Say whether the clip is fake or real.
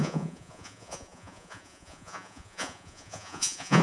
fake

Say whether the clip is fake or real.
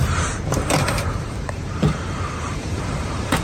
fake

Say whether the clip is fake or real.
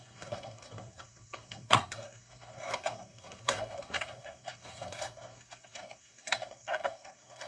fake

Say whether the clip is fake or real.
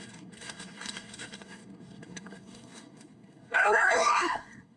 fake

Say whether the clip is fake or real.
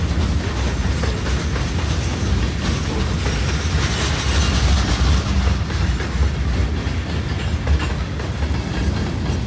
real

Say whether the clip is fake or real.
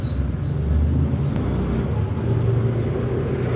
real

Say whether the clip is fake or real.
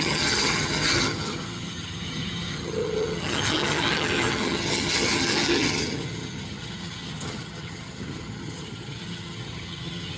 fake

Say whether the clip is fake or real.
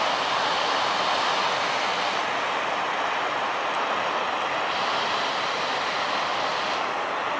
real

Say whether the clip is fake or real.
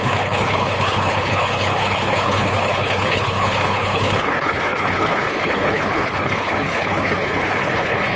fake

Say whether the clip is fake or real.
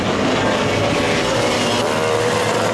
real